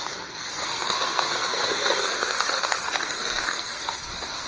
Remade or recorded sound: remade